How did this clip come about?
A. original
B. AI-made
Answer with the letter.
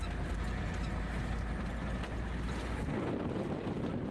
A